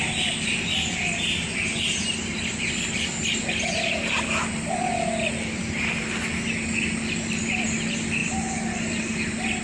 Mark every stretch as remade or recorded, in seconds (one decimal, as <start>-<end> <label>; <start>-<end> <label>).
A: 0.0-4.9 remade; 4.9-5.5 recorded; 5.5-9.6 remade